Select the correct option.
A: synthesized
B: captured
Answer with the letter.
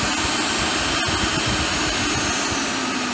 B